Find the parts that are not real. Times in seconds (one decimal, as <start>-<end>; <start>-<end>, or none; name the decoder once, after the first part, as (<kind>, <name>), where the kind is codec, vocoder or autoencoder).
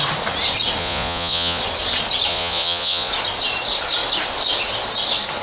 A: 0.8-1.6 (vocoder, Vocos); 2.3-3.1